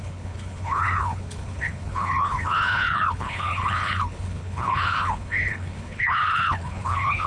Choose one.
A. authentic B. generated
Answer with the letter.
B